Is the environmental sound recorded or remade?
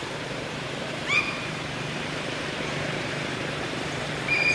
remade